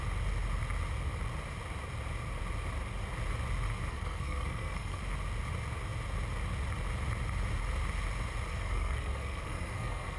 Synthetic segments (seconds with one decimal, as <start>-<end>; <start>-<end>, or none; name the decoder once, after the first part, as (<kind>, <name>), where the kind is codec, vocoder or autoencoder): 3.9-5.0 (codec, SNAC); 8.5-10.2